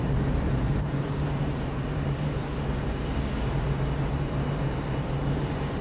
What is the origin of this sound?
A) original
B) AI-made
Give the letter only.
B